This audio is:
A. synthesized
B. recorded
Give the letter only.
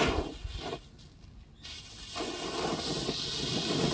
B